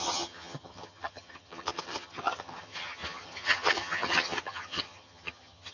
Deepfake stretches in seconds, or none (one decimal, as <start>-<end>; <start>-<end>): 0.0-5.7